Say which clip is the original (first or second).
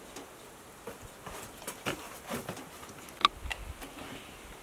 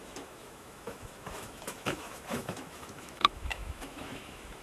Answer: first